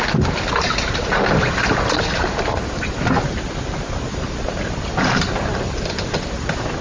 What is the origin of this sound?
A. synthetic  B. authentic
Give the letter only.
B